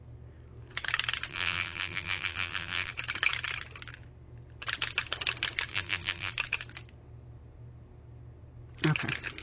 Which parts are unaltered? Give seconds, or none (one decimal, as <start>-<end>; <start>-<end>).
0.0-1.3; 2.9-5.7; 6.3-9.4